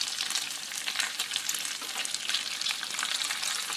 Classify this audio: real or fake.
real